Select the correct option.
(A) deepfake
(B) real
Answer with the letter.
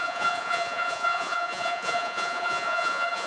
A